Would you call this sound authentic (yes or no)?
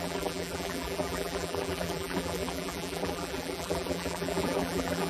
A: no